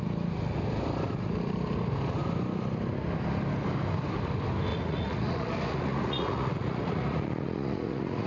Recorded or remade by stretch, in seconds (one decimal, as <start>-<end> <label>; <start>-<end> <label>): 0.0-4.7 recorded; 4.7-8.3 remade